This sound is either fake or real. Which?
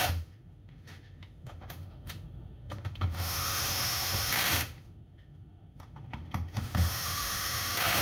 fake